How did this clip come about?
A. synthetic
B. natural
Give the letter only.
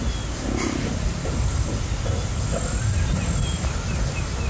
B